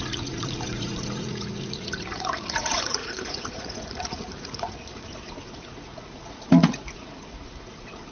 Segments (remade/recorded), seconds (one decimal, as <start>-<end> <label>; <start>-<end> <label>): 0.0-8.1 remade